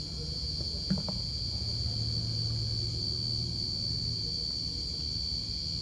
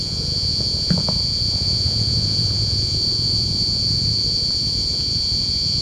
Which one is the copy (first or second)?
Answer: second